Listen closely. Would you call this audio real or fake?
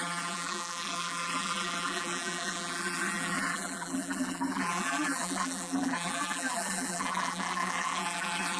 fake